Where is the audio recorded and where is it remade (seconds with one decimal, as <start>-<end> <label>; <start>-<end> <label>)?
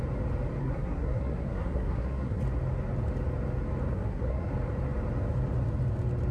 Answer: 0.0-0.6 recorded; 0.6-2.4 remade; 2.4-3.9 recorded; 3.9-4.5 remade; 4.5-6.3 recorded